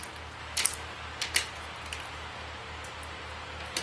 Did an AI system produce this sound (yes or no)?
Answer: no